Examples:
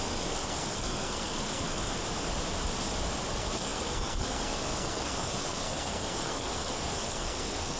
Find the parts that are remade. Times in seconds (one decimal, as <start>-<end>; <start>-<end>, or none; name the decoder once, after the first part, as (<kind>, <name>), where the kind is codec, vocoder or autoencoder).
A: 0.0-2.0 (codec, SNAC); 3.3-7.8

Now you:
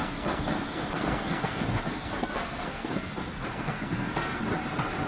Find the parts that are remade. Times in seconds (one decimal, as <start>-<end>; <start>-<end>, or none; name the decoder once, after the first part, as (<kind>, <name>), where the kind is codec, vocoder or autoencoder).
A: 0.0-3.1 (codec, SNAC); 3.5-4.4

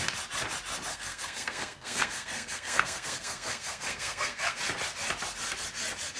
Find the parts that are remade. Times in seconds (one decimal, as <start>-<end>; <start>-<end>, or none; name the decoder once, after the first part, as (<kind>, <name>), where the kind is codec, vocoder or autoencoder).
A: 0.9-4.6 (codec, SNAC)

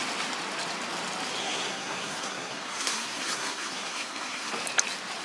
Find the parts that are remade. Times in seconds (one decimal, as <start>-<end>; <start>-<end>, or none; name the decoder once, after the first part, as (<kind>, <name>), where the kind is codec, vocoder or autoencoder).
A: 1.4-4.5 (codec, SNAC)